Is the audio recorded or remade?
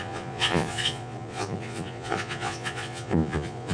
remade